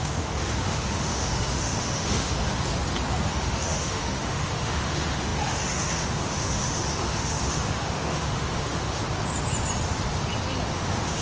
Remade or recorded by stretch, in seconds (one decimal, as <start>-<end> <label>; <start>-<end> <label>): 0.0-2.5 remade; 2.5-3.3 recorded; 3.3-9.0 remade; 9.0-10.7 recorded; 10.7-11.2 remade